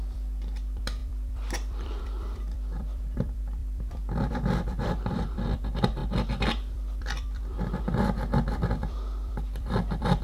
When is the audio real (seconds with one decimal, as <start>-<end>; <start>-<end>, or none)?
6.0-6.7